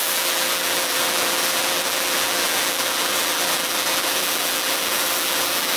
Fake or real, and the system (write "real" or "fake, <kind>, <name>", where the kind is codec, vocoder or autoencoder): fake, vocoder, BigVGAN v2